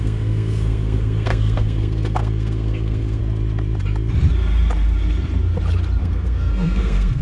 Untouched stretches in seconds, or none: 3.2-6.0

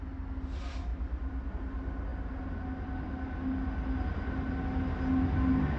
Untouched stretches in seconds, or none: 0.0-5.8

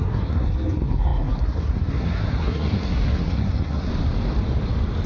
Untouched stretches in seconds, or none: 3.9-5.1

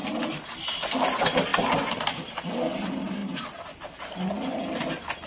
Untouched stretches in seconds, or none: 0.0-5.3

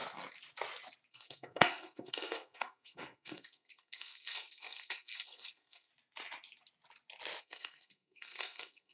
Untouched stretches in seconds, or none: 0.0-1.1; 5.9-7.4

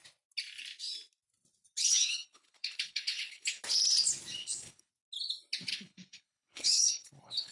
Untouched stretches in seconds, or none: 0.0-1.8; 3.6-4.4; 4.9-5.7